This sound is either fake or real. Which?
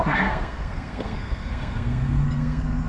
fake